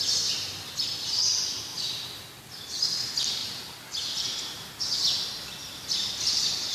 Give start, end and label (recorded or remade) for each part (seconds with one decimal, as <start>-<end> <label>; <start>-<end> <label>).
0.0-6.7 recorded